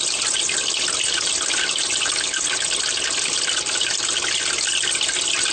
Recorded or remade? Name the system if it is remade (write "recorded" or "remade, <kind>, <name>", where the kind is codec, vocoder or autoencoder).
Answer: recorded